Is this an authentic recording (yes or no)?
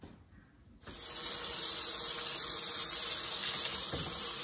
yes